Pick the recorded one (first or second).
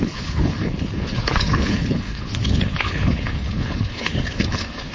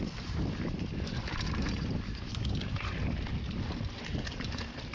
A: second